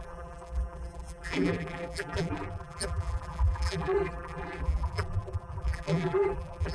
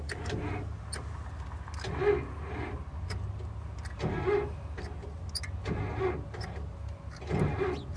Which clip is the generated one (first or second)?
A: first